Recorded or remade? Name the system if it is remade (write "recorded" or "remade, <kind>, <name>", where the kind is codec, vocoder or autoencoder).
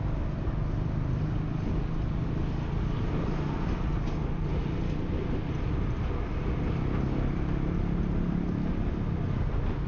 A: recorded